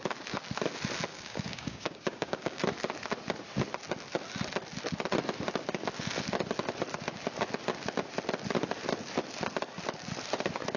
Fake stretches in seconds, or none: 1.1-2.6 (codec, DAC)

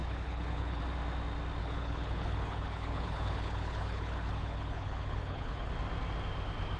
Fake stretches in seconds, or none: 0.0-0.8 (codec, HILCodec); 1.6-5.7

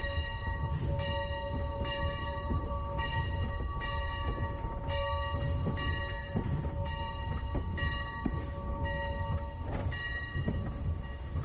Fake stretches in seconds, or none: 2.2-2.7 (vocoder, BigVGAN v2)

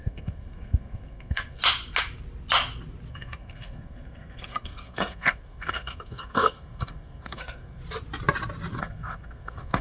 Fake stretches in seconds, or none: 0.0-1.6 (codec, SNAC); 3.1-7.8; 8.8-9.8